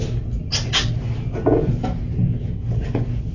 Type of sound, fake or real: real